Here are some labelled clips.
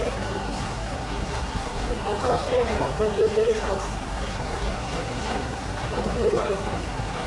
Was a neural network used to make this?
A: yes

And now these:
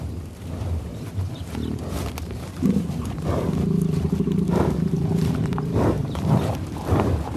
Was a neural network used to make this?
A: yes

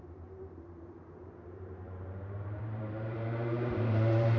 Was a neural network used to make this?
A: yes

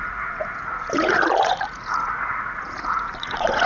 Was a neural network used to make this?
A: yes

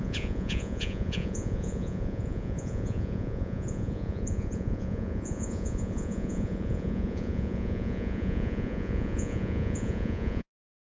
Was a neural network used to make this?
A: yes